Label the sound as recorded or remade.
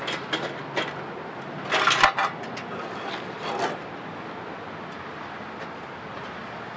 recorded